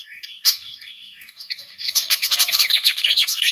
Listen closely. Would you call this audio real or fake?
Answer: fake